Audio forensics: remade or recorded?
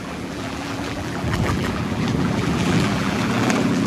remade